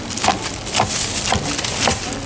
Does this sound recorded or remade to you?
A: recorded